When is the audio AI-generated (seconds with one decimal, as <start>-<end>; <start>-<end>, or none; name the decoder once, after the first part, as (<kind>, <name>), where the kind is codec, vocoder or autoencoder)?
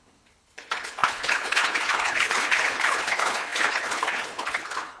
0.0-5.0 (codec, HILCodec)